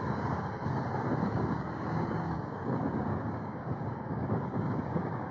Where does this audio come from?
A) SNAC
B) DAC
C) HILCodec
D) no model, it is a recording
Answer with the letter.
B